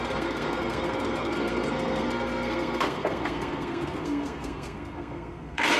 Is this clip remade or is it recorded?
remade